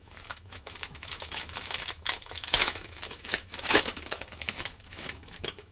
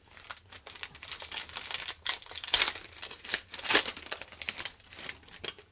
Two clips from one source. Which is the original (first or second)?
second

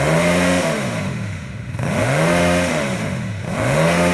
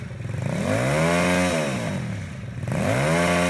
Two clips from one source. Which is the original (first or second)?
second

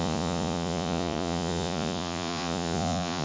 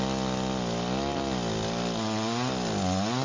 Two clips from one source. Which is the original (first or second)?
second